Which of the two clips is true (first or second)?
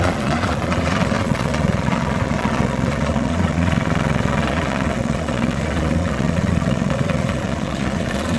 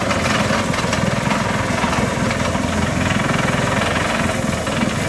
second